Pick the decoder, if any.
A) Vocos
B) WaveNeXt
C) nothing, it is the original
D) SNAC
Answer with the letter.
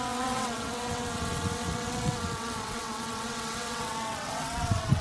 B